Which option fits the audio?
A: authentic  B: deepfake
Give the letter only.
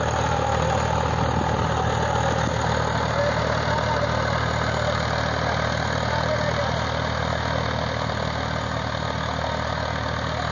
A